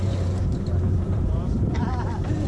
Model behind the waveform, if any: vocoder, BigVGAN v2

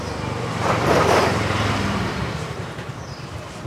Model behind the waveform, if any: vocoder, BigVGAN v2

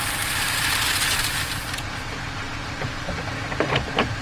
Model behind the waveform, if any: vocoder, BigVGAN v2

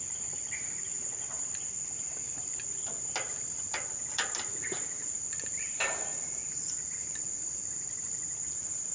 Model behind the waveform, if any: vocoder, BigVGAN v2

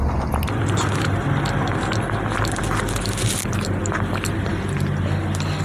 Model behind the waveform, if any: none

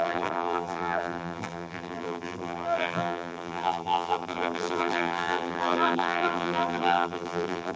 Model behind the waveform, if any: vocoder, BigVGAN v2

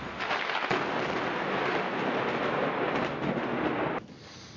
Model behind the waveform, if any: none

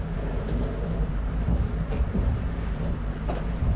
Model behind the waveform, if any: vocoder, BigVGAN v2